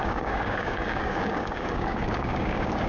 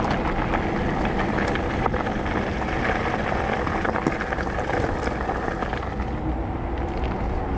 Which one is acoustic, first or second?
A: second